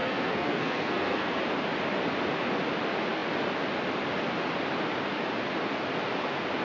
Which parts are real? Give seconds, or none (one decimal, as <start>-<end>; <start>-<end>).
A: 1.4-6.6